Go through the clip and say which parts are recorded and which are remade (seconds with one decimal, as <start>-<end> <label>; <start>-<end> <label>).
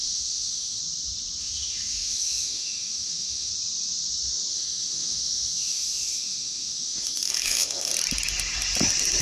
0.0-0.8 remade; 0.8-1.4 recorded; 1.4-3.5 remade; 3.5-4.5 recorded; 4.5-7.9 remade; 7.9-9.2 recorded